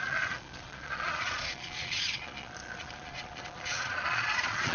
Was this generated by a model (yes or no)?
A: yes